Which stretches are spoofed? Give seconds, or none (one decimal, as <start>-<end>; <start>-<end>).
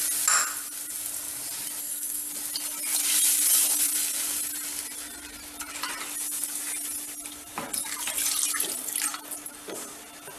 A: 1.8-2.3